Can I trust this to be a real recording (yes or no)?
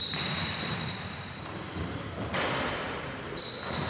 no